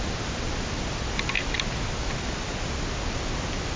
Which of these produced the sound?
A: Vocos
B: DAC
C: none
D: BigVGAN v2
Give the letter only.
C